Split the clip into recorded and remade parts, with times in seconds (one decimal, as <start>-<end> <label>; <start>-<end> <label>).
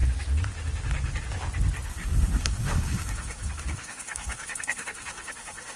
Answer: 0.0-1.9 recorded; 1.9-5.8 remade